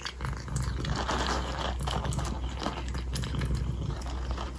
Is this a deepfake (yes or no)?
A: no